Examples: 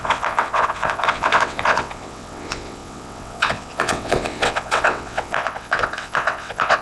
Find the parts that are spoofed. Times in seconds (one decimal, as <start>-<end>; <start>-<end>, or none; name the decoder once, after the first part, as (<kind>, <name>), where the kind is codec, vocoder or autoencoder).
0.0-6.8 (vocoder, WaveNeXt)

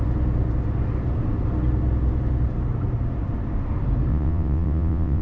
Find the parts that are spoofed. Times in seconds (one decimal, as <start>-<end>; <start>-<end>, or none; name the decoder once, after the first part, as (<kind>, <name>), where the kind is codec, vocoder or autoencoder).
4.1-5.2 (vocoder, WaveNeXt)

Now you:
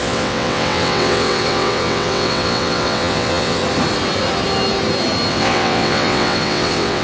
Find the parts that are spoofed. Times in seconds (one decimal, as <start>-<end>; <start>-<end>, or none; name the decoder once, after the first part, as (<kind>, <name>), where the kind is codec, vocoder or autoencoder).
0.0-3.6 (vocoder, WaveNeXt); 5.3-7.0

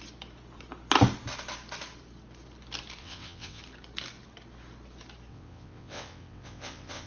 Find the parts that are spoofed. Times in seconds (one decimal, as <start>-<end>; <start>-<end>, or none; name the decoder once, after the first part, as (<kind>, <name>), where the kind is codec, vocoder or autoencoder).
3.0-3.6 (vocoder, WaveNeXt); 5.3-7.1

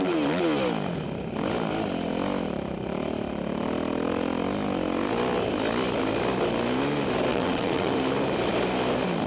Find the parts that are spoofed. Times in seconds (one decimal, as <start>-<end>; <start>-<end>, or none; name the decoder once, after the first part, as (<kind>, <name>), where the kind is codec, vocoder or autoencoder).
7.3-7.9 (vocoder, WaveNeXt)